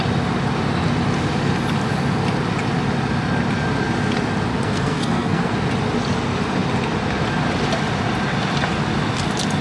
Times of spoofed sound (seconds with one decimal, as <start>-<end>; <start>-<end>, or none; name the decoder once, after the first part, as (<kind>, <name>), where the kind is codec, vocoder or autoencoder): 4.5-5.5 (codec, SNAC)